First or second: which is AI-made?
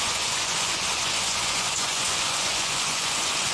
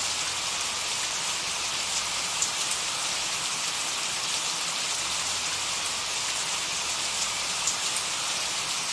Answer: first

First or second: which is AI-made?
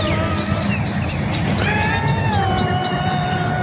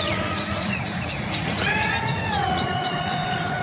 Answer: second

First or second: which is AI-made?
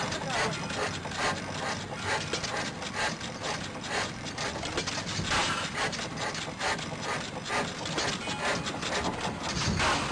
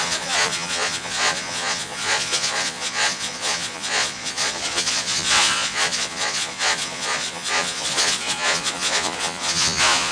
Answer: second